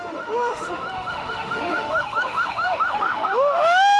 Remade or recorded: remade